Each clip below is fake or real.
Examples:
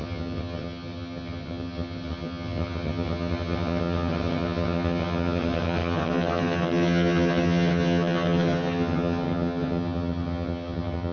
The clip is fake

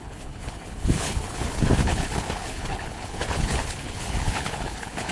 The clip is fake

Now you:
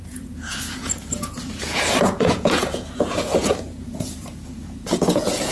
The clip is fake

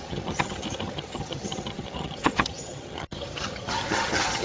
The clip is fake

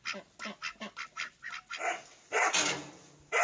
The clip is real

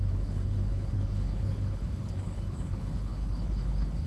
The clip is fake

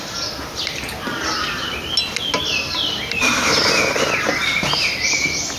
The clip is real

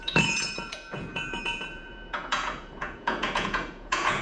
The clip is fake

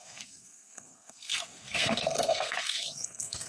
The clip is fake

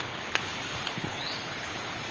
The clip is fake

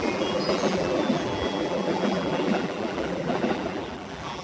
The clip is fake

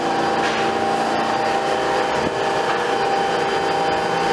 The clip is real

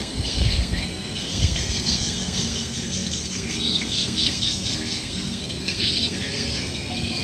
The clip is fake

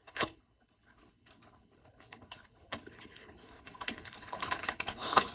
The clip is fake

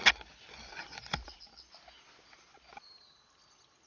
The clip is real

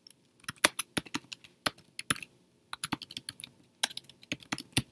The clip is real